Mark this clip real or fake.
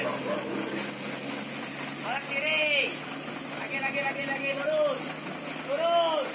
real